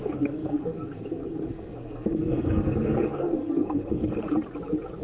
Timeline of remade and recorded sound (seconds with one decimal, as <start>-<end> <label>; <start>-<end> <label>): 0.0-4.0 remade; 4.0-5.0 recorded